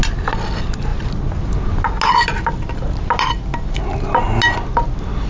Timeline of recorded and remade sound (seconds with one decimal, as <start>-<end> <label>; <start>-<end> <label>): 0.0-5.3 recorded